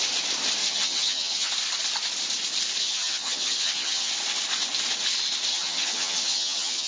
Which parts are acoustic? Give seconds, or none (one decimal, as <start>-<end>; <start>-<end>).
0.0-0.6; 1.5-2.8; 4.1-5.5